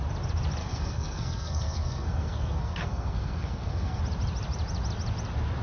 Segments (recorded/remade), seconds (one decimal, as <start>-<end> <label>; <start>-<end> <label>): 0.0-0.6 recorded; 0.6-4.0 remade; 4.0-5.6 recorded